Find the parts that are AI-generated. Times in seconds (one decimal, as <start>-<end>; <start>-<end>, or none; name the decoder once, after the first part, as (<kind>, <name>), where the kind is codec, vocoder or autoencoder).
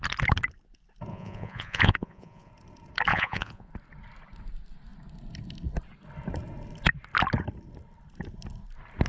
1.1-2.5 (vocoder, Vocos); 3.1-3.7